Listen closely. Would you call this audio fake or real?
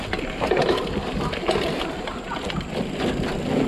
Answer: real